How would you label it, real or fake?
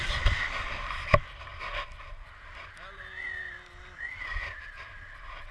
real